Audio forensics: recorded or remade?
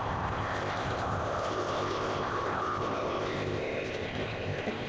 remade